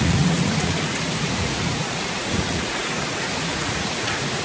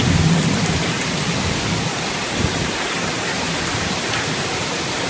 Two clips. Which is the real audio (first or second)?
second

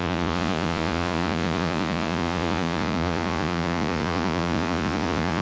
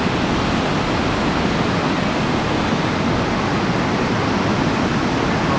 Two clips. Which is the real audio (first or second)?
second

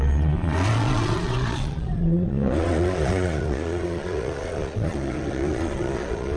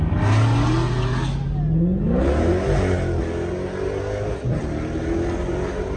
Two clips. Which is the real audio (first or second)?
second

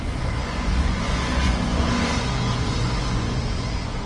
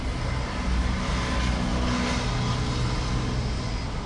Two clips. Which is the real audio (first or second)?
second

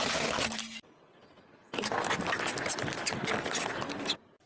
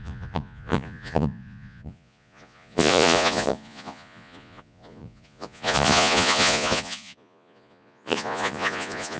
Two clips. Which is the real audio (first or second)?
first